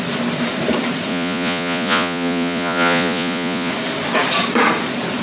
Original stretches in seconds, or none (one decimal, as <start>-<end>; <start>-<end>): 0.0-1.1; 3.7-5.2